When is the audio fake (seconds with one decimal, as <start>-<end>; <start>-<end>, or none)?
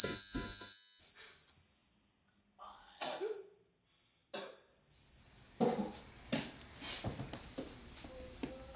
0.0-1.0